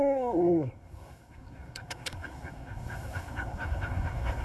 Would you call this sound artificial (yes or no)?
yes